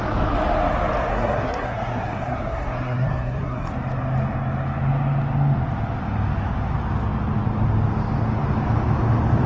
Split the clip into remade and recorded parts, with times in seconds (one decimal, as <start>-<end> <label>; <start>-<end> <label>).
0.0-1.1 recorded; 1.1-3.7 remade; 3.7-9.5 recorded